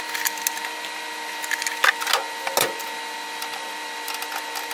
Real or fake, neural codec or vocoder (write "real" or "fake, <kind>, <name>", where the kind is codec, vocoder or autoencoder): real